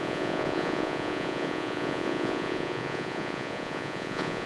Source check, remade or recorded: remade